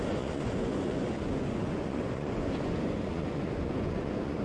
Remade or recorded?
remade